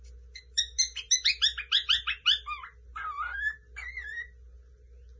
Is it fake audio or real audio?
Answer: real